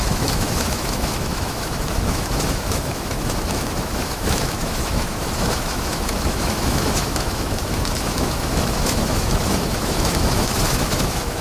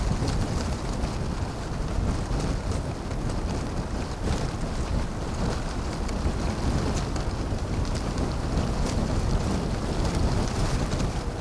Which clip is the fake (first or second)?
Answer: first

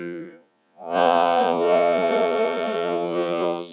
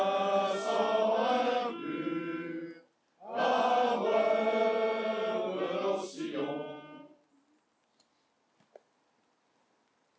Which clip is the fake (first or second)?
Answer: first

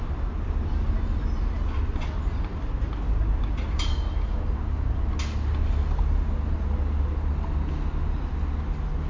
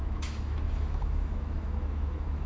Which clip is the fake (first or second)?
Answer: second